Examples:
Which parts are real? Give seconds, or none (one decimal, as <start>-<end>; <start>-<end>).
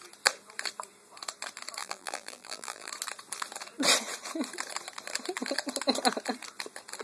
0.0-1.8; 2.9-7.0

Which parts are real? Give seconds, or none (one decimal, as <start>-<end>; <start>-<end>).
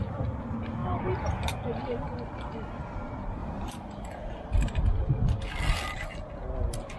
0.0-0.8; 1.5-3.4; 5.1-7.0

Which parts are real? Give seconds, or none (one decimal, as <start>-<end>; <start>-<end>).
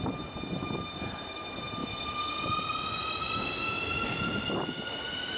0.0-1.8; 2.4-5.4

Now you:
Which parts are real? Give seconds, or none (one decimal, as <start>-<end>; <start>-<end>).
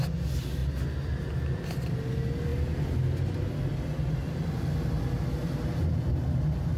0.0-6.8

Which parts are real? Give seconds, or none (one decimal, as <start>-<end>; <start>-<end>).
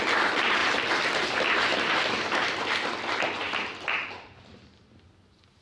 0.0-1.7; 5.1-5.6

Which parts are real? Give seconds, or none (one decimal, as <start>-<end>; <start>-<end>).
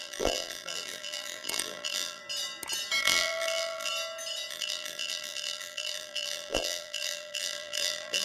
2.2-3.0; 3.9-4.5